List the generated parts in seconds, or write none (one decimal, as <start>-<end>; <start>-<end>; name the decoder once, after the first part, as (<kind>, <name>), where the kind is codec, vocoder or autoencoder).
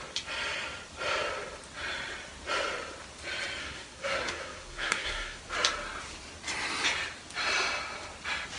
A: 3.6-5.4 (codec, SNAC)